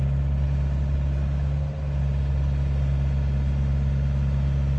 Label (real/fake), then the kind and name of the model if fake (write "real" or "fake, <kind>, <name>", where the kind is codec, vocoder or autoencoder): real